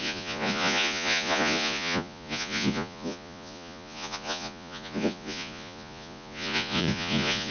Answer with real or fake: fake